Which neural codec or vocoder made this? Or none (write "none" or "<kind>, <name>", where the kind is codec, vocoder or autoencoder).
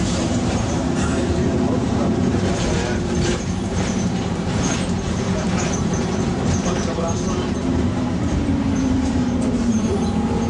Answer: vocoder, BigVGAN v2